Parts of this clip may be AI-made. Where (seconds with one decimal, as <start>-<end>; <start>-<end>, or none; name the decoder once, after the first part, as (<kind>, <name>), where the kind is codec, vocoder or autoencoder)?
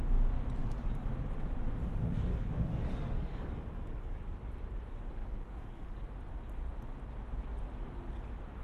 0.6-1.1 (codec, DAC); 2.3-4.2; 5.2-6.0